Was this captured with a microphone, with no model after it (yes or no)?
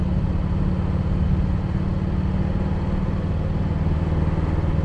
yes